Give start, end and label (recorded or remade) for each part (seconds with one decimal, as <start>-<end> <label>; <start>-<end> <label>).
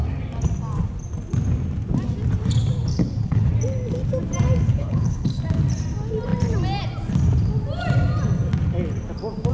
0.0-2.9 recorded; 2.9-3.5 remade; 3.5-4.7 recorded; 4.7-5.4 remade; 5.4-9.5 recorded